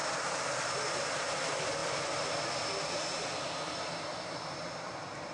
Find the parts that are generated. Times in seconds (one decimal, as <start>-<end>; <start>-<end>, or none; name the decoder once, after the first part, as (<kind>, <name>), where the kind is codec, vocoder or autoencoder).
0.0-1.2 (vocoder, BigVGAN v2)